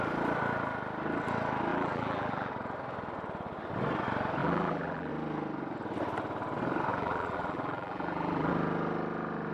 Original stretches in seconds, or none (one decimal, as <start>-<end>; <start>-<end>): 0.0-1.7; 2.5-4.4; 5.1-6.9; 8.5-9.5